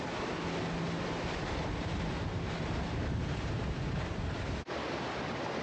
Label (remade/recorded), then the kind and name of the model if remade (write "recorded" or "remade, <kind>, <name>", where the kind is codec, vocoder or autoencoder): recorded